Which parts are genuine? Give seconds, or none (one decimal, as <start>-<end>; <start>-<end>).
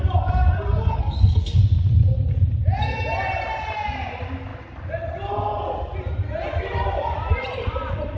0.0-0.9; 1.6-8.2